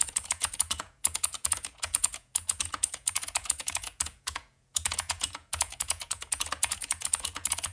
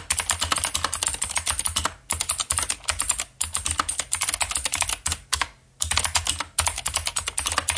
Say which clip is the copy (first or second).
first